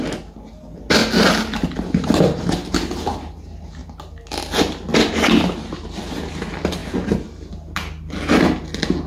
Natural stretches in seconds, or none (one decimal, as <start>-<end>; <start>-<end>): 0.0-9.1